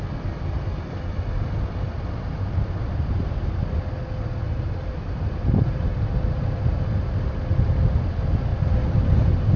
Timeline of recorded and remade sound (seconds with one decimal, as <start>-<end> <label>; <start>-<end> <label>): 0.0-9.6 recorded